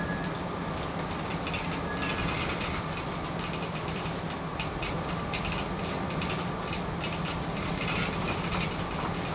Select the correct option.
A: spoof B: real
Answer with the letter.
B